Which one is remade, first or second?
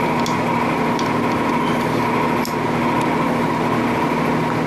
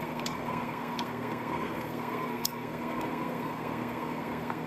second